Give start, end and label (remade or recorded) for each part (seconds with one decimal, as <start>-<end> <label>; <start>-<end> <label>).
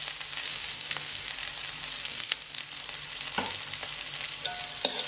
0.0-0.5 recorded; 0.5-1.3 remade; 1.3-2.0 recorded; 2.0-2.6 remade; 2.6-5.1 recorded